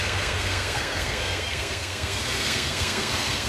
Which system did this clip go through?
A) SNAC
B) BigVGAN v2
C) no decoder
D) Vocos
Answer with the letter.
A